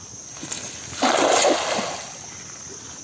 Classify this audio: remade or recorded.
recorded